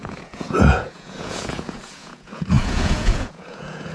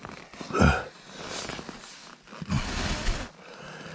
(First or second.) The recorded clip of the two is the second